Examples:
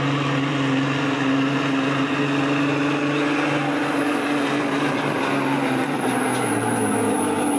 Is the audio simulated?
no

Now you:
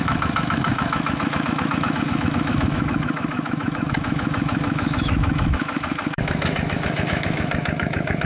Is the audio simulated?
yes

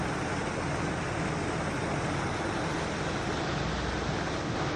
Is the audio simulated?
no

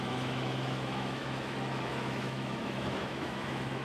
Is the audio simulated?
yes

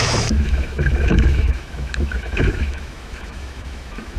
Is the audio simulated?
yes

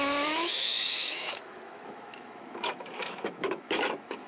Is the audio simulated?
yes